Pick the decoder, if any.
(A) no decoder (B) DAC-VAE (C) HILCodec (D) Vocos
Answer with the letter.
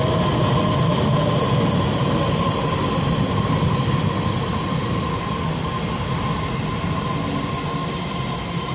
A